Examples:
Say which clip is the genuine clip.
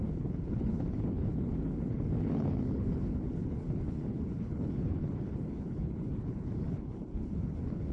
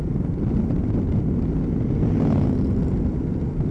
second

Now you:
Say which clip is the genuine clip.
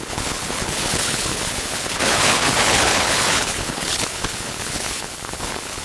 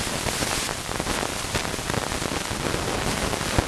second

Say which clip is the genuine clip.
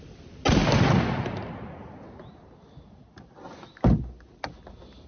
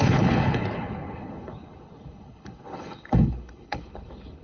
first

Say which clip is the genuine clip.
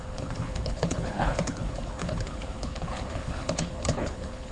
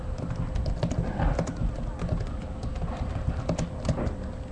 second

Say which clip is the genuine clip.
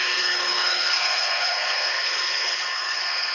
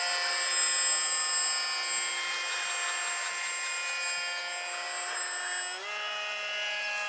second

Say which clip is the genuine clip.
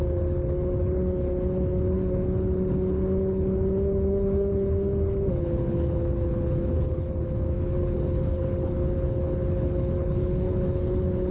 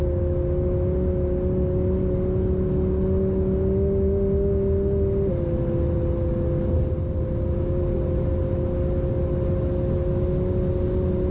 second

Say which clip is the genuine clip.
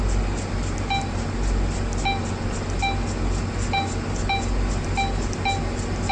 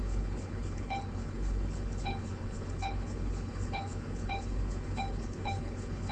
first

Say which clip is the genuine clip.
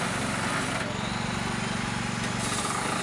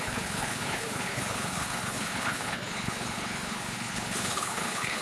first